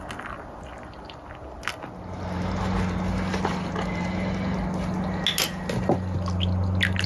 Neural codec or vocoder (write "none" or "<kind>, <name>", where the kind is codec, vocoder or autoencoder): none